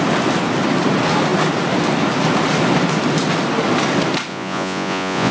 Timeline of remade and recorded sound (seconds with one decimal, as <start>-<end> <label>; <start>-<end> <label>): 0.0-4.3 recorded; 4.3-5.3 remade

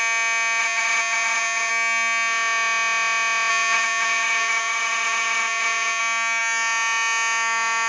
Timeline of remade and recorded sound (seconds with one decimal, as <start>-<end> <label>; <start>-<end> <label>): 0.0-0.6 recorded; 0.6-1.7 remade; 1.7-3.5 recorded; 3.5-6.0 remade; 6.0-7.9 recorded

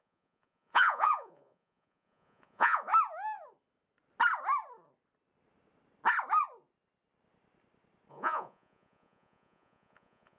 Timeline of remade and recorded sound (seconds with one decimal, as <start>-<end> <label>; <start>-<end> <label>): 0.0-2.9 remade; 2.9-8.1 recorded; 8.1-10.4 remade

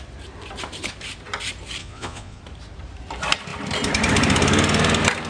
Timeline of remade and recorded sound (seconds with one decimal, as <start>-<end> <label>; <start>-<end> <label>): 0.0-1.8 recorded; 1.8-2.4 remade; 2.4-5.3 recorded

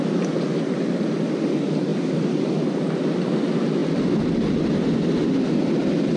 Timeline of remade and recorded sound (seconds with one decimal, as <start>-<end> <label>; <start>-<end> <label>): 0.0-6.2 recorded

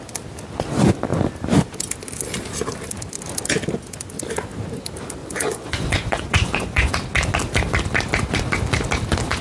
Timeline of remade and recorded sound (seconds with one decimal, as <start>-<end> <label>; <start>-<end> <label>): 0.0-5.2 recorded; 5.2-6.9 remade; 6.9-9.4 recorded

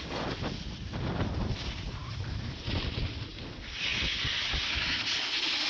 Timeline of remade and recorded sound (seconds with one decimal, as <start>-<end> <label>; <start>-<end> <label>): 0.0-5.7 recorded